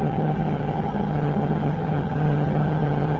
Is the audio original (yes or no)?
no